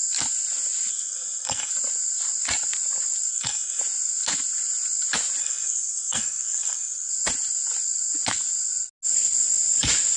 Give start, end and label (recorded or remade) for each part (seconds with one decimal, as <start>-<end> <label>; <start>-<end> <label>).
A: 0.0-0.9 recorded; 0.9-1.7 remade; 1.7-3.3 recorded; 3.3-3.8 remade; 3.8-5.4 recorded; 5.4-7.1 remade; 7.1-10.2 recorded